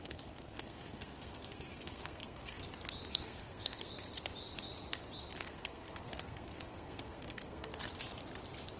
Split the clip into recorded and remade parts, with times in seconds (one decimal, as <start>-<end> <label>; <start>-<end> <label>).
0.0-2.6 remade; 2.6-3.1 recorded; 3.1-3.9 remade; 3.9-5.4 recorded; 5.4-7.7 remade; 7.7-8.8 recorded